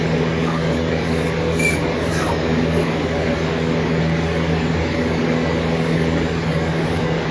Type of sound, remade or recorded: remade